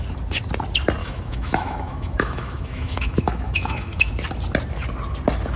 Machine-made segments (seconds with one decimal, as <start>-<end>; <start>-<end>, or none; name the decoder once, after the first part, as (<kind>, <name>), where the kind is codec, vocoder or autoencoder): 1.0-4.2 (autoencoder, DAC-VAE)